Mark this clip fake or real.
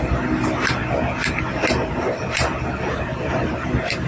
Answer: real